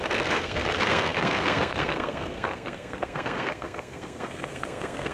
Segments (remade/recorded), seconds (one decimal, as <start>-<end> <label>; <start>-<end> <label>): 0.0-5.1 remade